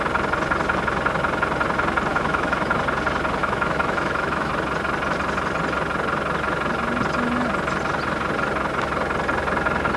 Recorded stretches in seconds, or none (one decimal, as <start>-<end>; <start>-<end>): 0.0-2.1; 2.8-3.4; 4.5-10.0